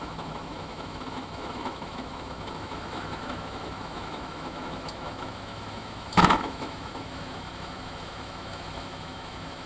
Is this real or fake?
fake